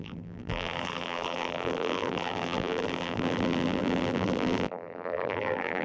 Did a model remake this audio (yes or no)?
yes